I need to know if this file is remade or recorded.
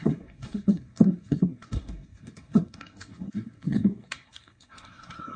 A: remade